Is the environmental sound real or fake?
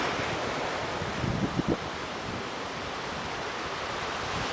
real